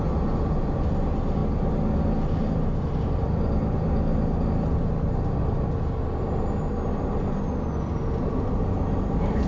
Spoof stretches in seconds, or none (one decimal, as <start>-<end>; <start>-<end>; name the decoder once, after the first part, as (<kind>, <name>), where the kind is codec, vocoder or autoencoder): none